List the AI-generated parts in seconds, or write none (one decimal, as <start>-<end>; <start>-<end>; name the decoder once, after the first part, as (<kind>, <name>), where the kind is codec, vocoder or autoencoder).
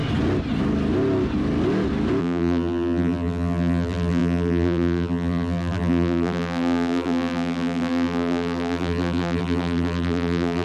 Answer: 2.2-10.6 (vocoder, BigVGAN v2)